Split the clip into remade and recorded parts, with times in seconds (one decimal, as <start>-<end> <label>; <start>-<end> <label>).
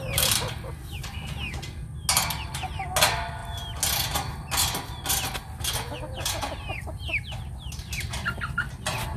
0.0-9.2 recorded